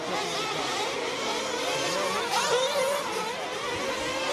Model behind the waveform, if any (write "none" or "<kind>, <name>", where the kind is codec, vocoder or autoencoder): none